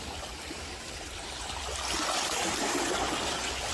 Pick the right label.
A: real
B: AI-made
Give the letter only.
A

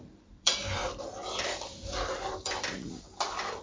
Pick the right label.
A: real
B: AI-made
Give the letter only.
B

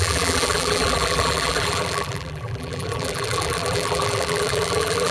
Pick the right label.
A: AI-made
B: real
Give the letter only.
A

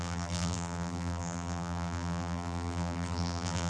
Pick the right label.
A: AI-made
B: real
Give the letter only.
A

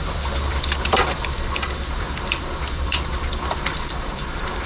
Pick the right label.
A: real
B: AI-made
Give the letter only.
B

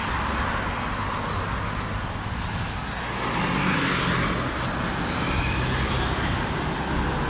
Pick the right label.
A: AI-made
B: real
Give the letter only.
B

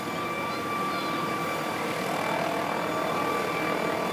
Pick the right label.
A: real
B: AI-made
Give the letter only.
A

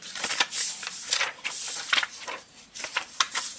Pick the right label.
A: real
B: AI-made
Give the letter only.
B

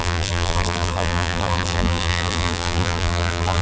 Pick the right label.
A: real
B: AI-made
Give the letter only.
B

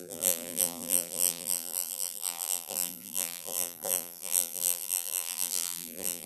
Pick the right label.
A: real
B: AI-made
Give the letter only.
B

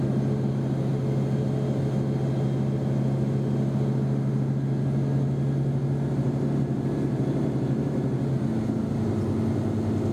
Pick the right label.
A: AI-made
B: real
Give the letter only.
B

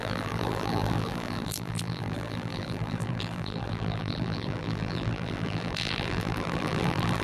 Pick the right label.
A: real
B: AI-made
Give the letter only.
B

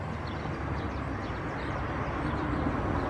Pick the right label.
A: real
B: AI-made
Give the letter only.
A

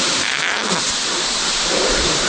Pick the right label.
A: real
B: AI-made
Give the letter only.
A